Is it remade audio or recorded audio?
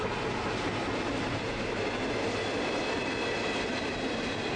recorded